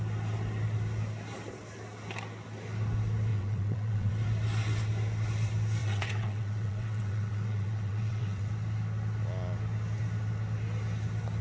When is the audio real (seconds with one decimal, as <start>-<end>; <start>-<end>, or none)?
0.0-3.3; 4.1-5.8; 8.5-11.4